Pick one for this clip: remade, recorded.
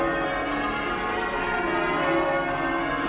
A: recorded